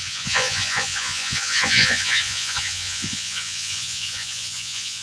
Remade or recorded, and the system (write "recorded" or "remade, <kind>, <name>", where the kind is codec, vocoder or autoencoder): remade, vocoder, Vocos